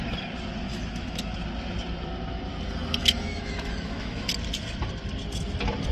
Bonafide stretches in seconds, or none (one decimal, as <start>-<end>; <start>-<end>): 0.0-0.7; 1.3-3.0; 4.3-5.9